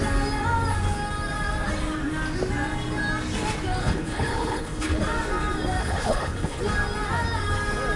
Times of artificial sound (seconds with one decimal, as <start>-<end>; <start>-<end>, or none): 3.8-5.0; 5.8-6.6